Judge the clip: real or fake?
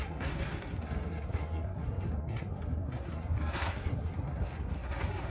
fake